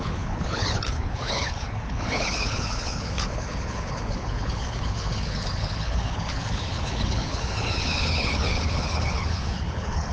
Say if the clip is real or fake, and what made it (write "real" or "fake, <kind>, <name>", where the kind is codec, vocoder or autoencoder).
fake, codec, HILCodec